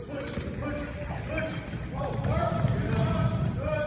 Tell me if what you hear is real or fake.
real